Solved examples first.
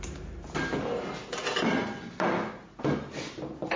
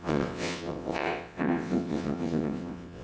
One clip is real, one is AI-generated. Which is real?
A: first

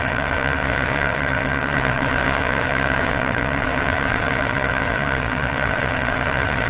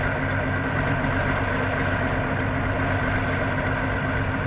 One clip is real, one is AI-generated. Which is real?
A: second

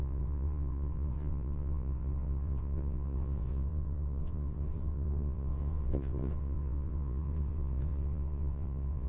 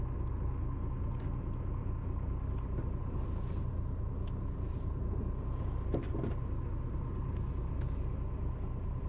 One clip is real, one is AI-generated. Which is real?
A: second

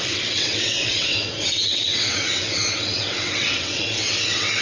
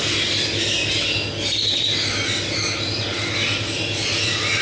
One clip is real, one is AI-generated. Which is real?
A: second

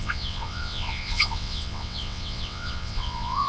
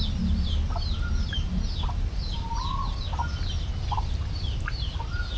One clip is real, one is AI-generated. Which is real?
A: second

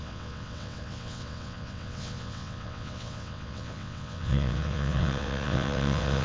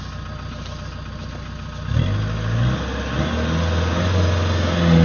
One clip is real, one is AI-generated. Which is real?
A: second